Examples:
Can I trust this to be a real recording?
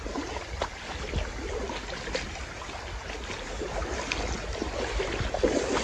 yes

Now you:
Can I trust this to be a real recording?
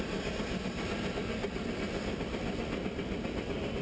yes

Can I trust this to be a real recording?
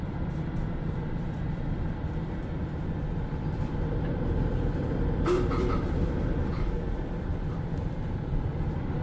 no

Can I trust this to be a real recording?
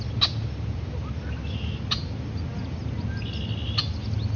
yes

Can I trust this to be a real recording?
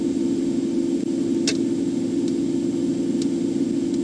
yes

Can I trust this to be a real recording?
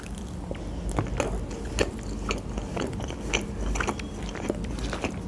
yes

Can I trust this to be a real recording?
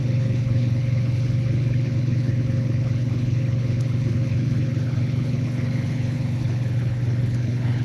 no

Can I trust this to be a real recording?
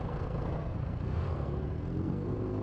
no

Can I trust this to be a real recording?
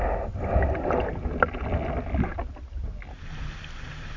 yes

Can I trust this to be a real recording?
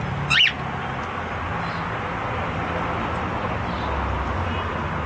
yes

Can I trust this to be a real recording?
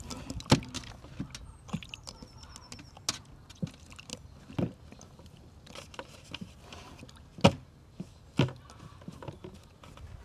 yes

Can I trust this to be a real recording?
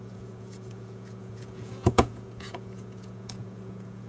no